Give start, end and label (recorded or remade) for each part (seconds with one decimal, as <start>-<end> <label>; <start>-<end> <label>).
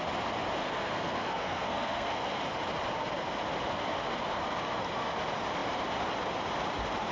0.0-0.6 recorded; 0.6-2.4 remade; 2.4-7.1 recorded